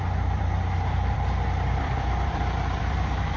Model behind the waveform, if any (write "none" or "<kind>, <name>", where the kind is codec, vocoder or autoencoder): vocoder, BigVGAN v2